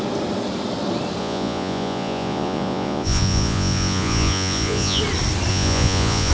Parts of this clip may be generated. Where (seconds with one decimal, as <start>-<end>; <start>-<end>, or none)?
1.2-5.0; 5.5-6.3